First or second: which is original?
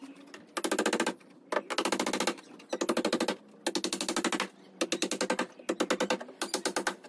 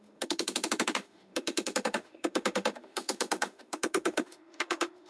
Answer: first